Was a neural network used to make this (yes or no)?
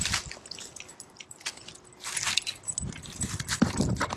no